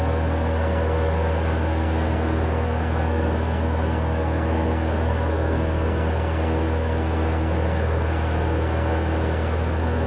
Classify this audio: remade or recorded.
remade